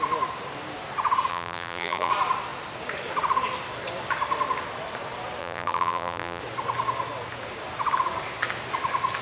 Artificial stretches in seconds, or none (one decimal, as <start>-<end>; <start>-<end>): 1.3-2.1; 5.4-6.4